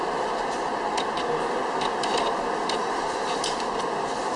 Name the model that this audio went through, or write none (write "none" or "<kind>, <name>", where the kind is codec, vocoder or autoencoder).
none